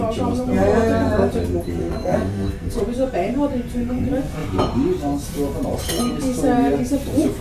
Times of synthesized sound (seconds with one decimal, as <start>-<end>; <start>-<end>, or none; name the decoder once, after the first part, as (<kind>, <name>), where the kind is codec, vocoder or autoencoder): 1.8-2.8 (codec, SNAC)